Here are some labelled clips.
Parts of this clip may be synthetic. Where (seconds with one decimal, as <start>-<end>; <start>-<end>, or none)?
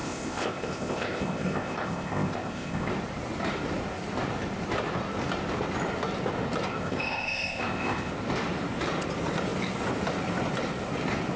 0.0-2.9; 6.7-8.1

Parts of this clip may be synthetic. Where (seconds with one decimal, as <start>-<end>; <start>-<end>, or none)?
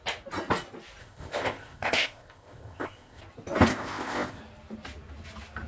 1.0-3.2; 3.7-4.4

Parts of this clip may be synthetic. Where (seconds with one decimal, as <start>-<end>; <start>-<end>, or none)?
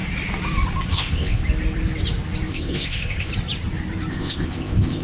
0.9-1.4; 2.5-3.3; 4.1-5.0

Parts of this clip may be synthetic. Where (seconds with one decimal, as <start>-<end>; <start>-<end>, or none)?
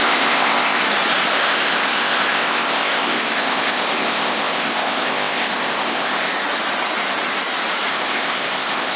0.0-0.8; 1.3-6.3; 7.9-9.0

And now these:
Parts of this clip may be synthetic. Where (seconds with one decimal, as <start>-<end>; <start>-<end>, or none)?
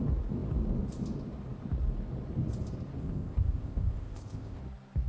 3.0-4.6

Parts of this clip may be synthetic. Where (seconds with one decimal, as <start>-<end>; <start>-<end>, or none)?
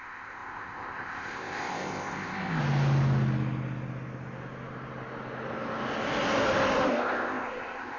0.0-2.6; 6.9-8.0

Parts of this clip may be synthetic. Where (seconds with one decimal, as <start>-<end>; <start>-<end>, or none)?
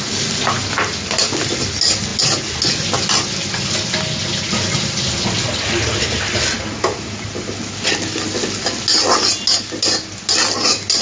none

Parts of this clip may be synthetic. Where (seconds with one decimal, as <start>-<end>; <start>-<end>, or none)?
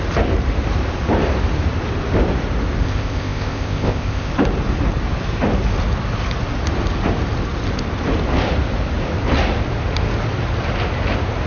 2.8-4.3